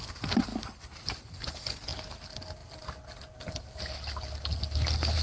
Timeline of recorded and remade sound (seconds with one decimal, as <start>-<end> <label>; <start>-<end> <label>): 0.0-5.2 recorded